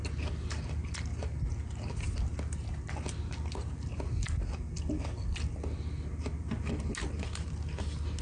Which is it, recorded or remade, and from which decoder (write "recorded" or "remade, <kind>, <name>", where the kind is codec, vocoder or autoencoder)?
recorded